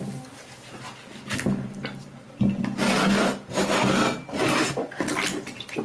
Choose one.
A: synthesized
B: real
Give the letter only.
B